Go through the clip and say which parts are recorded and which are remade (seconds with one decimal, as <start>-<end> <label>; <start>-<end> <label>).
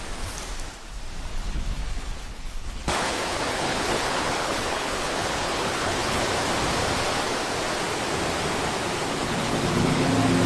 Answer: 0.0-1.3 recorded; 1.3-6.2 remade; 6.2-9.2 recorded; 9.2-10.1 remade; 10.1-10.5 recorded